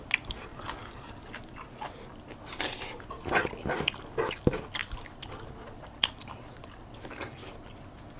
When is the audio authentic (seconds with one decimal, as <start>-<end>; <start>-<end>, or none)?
0.0-8.2